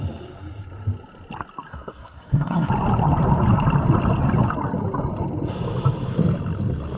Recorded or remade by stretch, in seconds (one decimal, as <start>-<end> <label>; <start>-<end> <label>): 0.0-1.7 recorded; 1.7-2.7 remade; 2.7-7.0 recorded